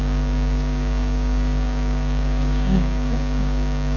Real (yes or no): no